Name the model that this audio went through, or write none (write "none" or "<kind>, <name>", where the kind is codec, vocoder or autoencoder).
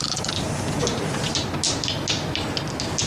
none